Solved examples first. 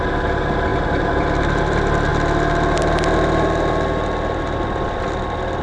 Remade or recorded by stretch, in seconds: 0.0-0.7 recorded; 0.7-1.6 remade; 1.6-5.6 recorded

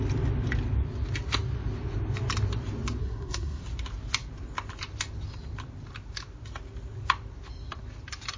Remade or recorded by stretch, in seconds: 0.0-3.0 recorded; 3.0-3.6 remade; 3.6-8.4 recorded

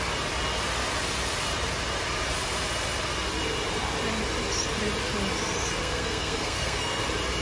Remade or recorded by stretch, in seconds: 0.0-5.8 recorded; 5.8-7.0 remade; 7.0-7.4 recorded

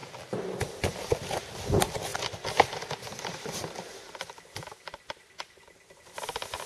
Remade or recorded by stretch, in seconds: 0.0-2.1 recorded; 2.1-6.1 remade; 6.1-6.7 recorded

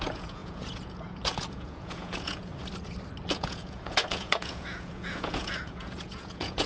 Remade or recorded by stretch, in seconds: 0.0-2.5 remade; 2.5-3.3 recorded; 3.3-6.7 remade